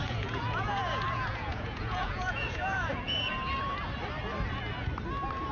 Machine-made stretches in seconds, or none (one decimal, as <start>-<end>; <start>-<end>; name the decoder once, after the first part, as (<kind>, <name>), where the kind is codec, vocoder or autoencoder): 0.0-3.3 (vocoder, Vocos)